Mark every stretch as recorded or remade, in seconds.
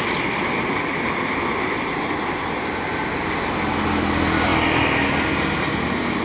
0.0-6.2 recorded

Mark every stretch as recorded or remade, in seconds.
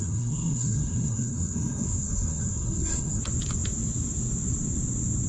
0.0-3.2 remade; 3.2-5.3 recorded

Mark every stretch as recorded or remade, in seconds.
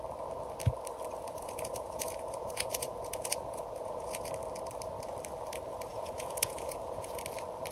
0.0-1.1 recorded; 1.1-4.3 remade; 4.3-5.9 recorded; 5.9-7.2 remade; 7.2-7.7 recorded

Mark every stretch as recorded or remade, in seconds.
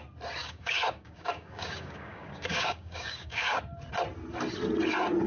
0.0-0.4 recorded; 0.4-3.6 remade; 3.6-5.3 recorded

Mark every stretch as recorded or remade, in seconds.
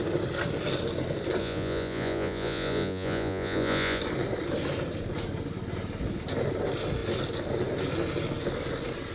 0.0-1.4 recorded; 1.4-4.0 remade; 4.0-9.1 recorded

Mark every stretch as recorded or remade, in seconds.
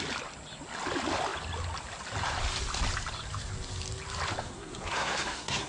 0.0-4.4 recorded; 4.4-5.7 remade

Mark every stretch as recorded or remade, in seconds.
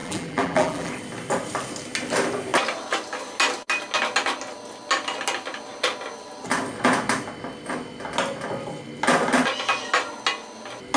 0.0-0.9 remade; 0.9-11.0 recorded